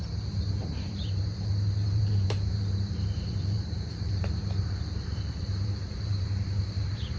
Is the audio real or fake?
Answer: fake